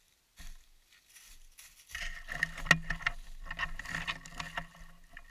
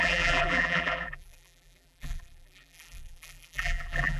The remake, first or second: second